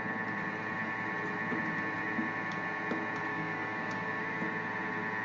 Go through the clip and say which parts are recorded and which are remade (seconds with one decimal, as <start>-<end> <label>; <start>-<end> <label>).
0.0-3.3 recorded; 3.3-4.2 remade; 4.2-5.2 recorded